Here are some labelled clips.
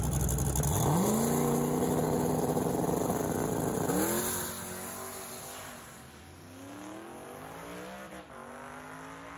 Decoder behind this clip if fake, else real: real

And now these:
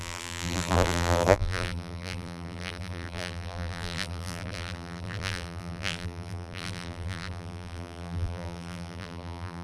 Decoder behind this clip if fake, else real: fake, vocoder, BigVGAN v2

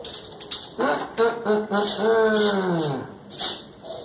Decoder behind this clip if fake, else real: real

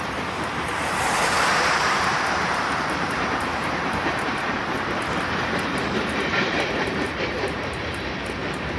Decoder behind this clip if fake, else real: fake, vocoder, BigVGAN v2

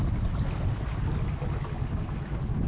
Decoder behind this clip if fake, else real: real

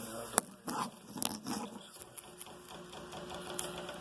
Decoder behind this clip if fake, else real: real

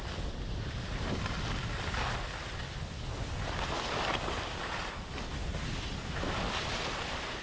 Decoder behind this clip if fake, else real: real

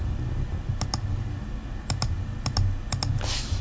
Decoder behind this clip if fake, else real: real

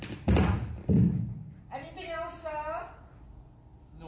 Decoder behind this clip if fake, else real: real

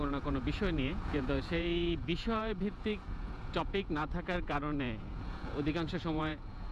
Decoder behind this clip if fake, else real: fake, vocoder, Vocos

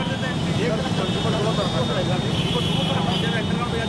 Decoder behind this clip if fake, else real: real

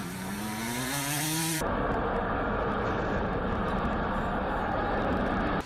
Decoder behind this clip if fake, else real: fake, vocoder, BigVGAN v2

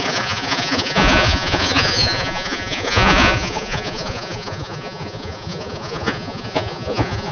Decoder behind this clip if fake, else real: fake, vocoder, Vocos